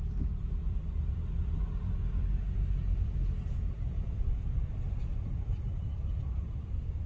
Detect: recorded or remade remade